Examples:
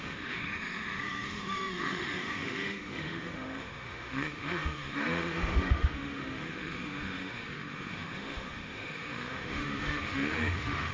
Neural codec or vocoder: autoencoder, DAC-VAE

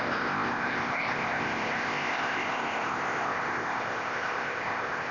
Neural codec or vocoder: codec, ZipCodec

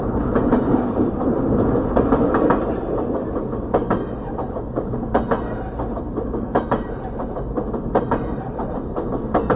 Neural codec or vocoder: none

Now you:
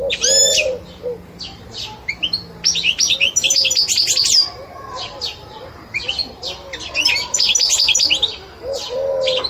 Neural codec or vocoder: none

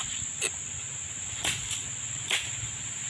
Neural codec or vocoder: none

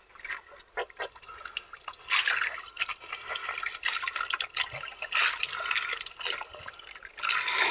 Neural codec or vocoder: none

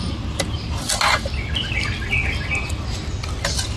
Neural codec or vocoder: none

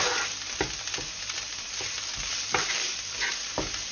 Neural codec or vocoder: vocoder, BigVGAN v2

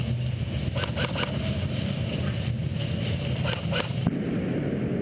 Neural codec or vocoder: none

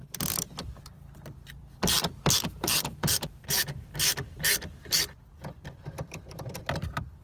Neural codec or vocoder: vocoder, BigVGAN v2